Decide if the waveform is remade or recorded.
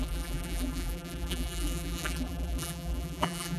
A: remade